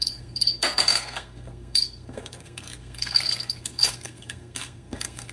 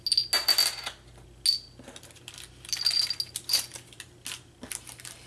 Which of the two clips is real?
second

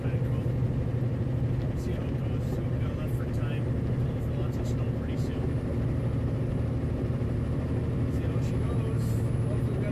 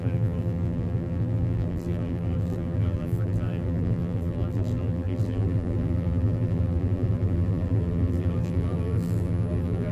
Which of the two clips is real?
first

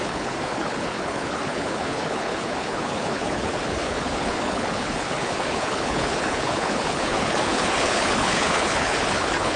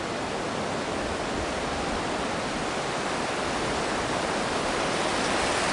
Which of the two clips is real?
second